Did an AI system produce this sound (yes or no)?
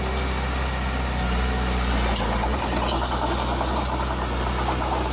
no